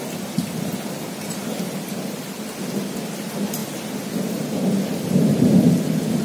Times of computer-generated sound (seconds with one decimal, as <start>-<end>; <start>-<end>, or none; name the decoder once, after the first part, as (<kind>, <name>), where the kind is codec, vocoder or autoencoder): none